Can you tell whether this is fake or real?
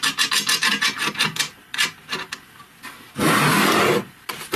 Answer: real